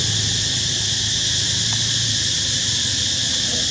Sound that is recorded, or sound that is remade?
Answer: recorded